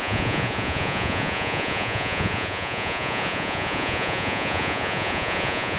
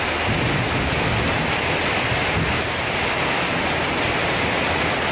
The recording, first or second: second